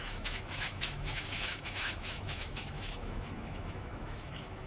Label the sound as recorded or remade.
remade